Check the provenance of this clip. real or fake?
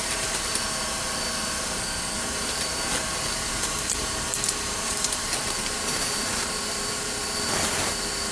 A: fake